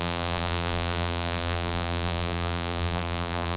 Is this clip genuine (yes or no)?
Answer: no